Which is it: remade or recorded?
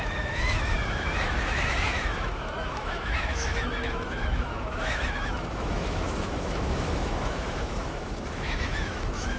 remade